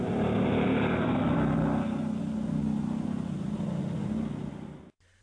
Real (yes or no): yes